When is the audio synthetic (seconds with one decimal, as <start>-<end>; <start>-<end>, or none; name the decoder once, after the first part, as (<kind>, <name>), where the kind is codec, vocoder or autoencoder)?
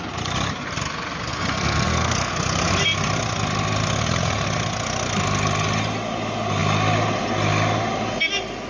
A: 1.3-2.3 (codec, SNAC)